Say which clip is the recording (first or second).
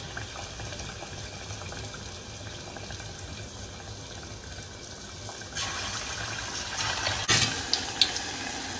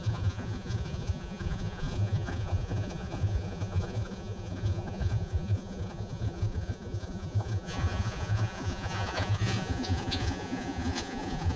first